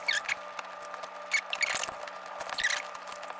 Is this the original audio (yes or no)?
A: yes